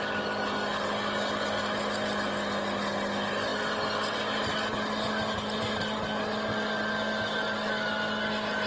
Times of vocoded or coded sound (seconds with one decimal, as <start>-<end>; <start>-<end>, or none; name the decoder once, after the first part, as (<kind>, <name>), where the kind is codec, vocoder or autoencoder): none

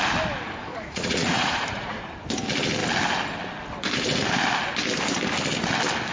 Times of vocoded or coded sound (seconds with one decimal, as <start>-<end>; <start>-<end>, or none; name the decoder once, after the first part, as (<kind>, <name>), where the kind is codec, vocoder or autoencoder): 0.7-2.0 (vocoder, Vocos)

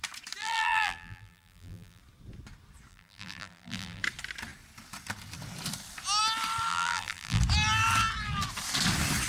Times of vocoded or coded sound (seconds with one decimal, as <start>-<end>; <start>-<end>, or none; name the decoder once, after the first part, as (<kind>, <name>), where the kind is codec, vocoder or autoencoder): 0.4-2.0 (vocoder, BigVGAN v2); 2.9-4.0; 6.7-7.4

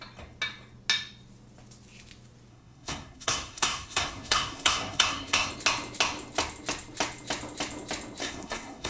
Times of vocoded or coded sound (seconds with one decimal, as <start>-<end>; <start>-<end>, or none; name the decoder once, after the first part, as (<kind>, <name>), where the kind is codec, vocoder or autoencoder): 2.5-5.5 (codec, SNAC); 8.2-8.9

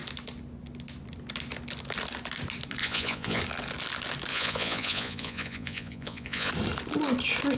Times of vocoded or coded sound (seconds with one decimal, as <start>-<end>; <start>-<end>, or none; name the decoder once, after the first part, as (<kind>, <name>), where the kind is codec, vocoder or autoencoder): 2.8-3.4 (vocoder, Vocos); 4.3-6.5

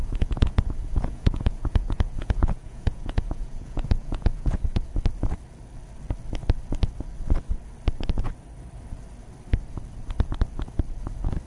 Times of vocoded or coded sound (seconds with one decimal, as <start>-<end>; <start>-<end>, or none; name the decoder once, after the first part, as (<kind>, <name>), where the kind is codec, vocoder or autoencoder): 0.0-4.9 (vocoder, Vocos)